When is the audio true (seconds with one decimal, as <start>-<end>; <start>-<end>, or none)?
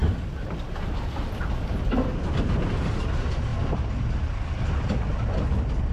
0.0-5.9